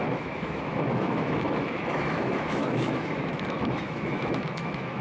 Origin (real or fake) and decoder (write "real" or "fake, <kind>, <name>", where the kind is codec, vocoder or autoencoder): fake, autoencoder, DAC-VAE